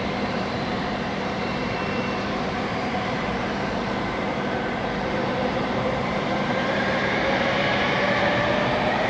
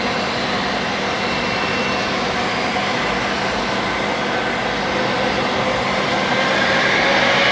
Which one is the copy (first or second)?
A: first